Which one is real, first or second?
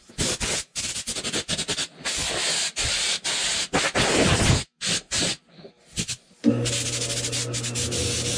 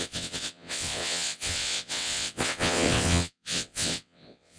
first